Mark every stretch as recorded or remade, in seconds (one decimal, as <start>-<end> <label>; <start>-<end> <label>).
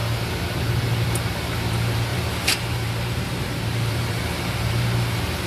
0.0-2.1 recorded; 2.1-5.5 remade